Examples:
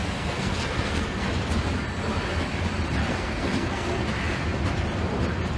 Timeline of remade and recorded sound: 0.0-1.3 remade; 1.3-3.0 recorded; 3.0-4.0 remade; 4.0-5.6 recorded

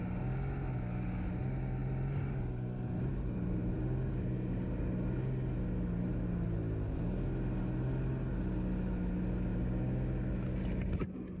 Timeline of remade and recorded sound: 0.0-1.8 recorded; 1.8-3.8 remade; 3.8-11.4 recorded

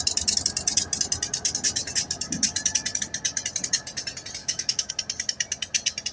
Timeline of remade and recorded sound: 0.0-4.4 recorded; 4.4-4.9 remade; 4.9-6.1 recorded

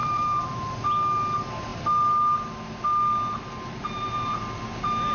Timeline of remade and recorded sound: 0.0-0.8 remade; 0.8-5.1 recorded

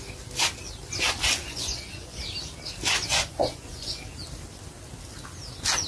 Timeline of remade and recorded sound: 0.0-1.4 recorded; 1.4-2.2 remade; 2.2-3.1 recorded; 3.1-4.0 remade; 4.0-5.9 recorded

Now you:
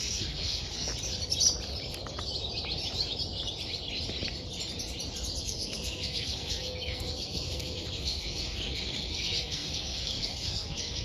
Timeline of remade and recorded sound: 0.0-0.9 remade; 0.9-5.4 recorded; 5.4-11.0 remade

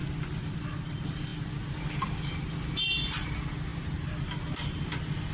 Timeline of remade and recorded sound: 0.0-5.3 recorded